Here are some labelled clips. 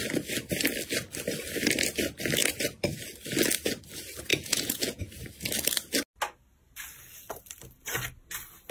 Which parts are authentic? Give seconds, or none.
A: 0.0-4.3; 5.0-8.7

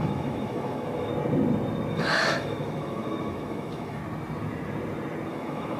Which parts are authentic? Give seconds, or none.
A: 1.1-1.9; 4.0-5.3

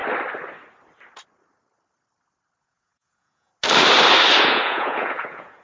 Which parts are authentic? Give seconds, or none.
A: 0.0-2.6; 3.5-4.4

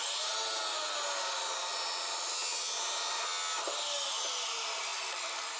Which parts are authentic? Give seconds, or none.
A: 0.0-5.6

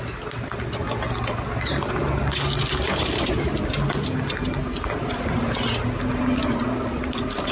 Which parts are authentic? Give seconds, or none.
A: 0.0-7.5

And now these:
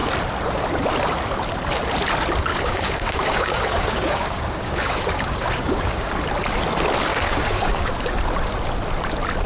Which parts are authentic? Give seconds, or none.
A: 0.0-2.5; 6.1-7.1; 7.9-9.5

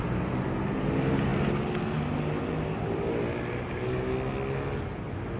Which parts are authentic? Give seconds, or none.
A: 0.0-5.4

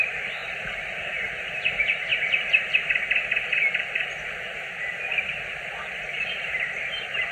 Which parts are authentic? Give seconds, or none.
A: 2.1-6.3